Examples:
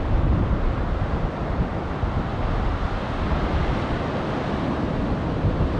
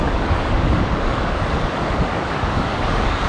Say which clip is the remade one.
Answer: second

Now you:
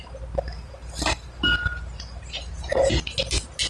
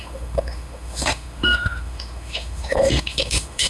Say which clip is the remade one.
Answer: second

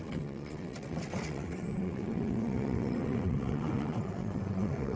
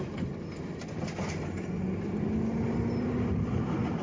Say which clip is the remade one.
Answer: first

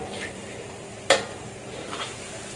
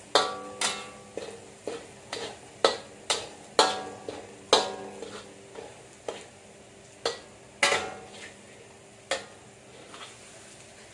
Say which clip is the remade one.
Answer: first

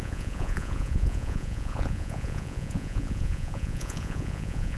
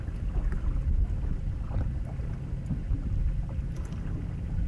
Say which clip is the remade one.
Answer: first